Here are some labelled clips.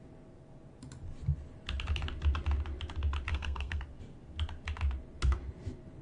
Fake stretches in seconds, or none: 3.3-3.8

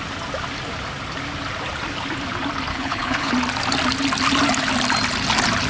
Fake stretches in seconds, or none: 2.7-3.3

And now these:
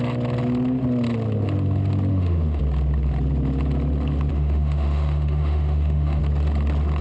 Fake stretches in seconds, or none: 2.1-2.6; 4.3-6.2

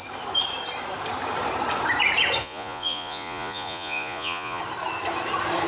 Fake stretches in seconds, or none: 2.4-4.6